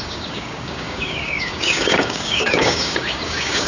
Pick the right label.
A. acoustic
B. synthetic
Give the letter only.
B